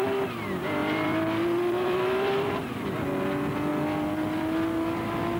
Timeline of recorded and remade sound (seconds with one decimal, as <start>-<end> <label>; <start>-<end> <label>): 0.0-0.8 recorded; 0.8-2.5 remade; 2.5-5.4 recorded